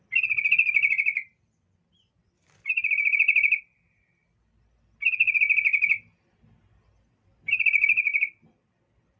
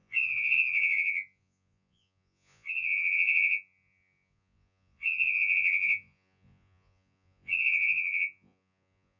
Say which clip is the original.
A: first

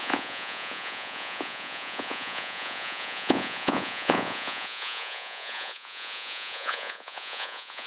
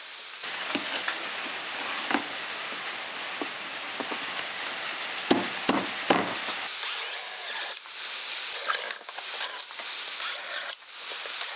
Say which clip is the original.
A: second